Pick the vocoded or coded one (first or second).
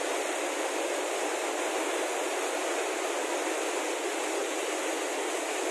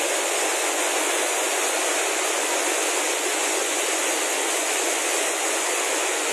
second